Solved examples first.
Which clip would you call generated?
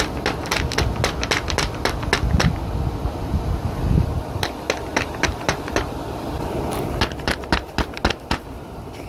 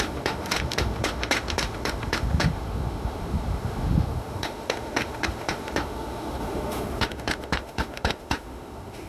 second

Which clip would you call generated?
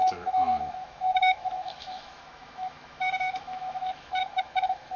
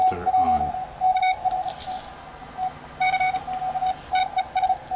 first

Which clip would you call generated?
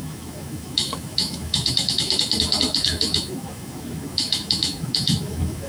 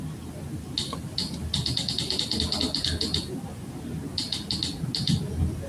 first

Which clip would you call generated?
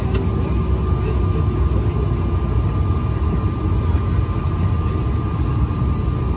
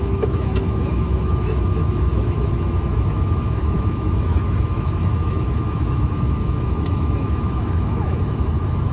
second